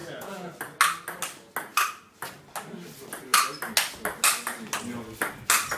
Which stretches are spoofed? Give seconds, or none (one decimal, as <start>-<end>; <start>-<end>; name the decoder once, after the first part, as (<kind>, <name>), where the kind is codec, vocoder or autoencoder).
0.0-0.5 (vocoder, Vocos)